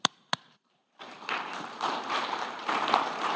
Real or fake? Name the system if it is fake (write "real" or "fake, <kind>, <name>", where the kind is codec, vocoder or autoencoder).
fake, vocoder, BigVGAN v2